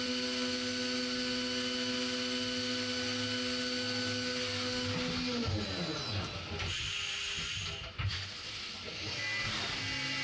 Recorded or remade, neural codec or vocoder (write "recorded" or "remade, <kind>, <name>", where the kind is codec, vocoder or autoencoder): recorded